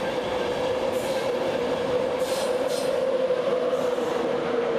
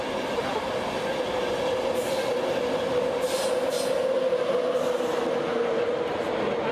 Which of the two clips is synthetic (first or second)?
first